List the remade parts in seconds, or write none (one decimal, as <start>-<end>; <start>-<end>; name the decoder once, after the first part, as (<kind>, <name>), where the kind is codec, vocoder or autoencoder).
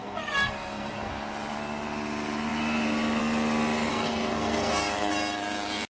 0.0-1.1 (codec, SNAC); 3.9-5.1